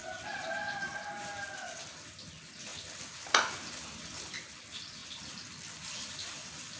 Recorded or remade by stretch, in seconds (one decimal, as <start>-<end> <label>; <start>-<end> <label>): 0.0-6.8 recorded